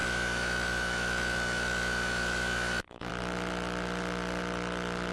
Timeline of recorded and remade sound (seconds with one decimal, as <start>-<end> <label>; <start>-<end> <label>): 0.0-3.1 remade; 3.1-5.1 recorded